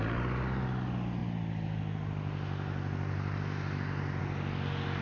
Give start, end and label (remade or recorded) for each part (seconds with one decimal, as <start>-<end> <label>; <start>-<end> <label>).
0.0-5.0 recorded